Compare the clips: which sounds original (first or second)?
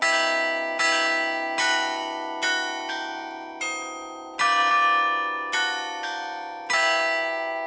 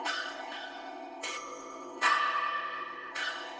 first